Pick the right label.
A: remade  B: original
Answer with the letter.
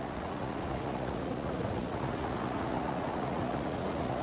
A